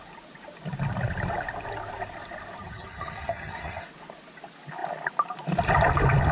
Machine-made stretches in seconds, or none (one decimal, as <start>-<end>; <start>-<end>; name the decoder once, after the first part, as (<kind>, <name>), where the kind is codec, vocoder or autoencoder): 2.6-3.8 (vocoder, HiFi-GAN)